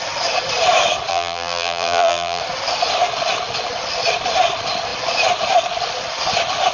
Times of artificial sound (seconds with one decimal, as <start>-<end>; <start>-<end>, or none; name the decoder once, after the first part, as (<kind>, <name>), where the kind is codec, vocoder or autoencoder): 1.1-2.4 (vocoder, BigVGAN v2)